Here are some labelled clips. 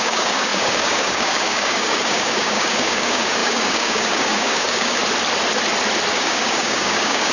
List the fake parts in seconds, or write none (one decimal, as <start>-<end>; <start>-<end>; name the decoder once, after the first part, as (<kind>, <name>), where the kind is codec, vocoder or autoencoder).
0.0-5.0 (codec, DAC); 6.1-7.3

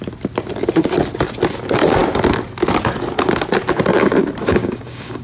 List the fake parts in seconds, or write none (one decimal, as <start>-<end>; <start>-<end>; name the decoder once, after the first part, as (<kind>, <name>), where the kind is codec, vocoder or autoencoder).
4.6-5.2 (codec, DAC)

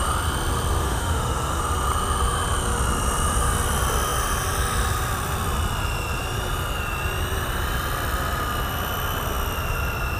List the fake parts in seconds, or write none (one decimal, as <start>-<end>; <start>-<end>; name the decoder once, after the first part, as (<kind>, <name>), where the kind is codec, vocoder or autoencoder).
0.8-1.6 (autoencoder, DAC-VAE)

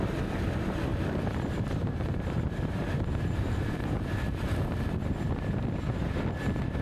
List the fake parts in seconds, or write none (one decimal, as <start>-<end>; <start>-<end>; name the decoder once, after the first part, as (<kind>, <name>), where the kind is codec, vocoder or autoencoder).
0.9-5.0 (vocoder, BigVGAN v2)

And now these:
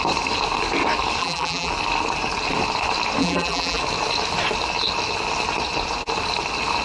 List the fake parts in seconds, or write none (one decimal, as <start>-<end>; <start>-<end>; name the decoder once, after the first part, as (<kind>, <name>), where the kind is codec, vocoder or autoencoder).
1.2-1.7 (vocoder, BigVGAN v2); 3.2-3.8

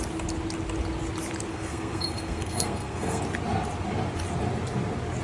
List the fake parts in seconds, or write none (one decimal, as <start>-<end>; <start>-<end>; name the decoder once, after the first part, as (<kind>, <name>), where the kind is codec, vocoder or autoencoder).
1.5-3.2 (codec, SNAC)

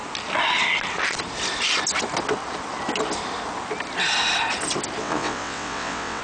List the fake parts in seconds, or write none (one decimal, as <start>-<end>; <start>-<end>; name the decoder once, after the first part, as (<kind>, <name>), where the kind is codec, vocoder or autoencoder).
5.0-6.2 (vocoder, WaveNeXt)

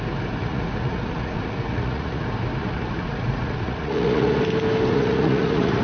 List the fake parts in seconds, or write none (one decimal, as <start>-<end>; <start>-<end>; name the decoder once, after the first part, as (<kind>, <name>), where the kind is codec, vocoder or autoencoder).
0.4-2.2 (vocoder, Vocos); 2.6-4.4; 4.9-5.8